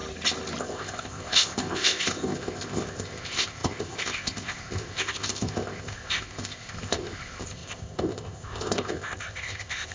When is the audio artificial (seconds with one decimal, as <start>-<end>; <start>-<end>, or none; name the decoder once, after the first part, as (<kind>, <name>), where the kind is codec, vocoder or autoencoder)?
0.6-9.9 (codec, ZipCodec)